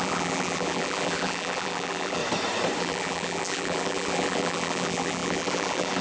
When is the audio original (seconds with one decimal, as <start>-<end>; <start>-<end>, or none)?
2.2-2.8